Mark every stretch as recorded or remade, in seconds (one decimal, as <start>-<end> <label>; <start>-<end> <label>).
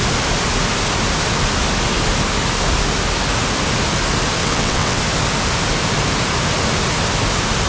0.0-4.4 recorded; 4.4-5.0 remade; 5.0-7.7 recorded